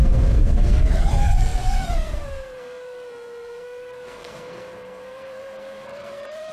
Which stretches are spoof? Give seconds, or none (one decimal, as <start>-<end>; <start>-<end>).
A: 0.0-6.5